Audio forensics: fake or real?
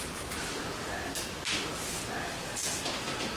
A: real